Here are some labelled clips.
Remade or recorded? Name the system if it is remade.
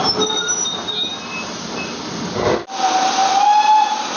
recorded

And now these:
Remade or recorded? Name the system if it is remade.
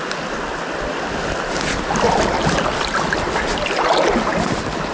recorded